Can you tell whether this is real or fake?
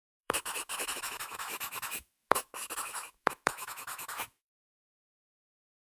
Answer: fake